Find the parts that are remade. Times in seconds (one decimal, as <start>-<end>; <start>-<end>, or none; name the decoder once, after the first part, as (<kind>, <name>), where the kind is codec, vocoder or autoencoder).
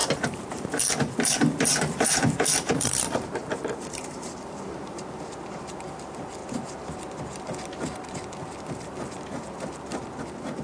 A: 0.0-5.2 (vocoder, BigVGAN v2)